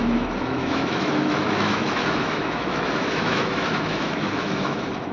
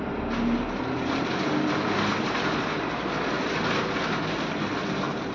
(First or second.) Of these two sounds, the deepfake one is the first